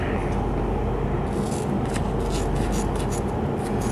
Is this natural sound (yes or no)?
yes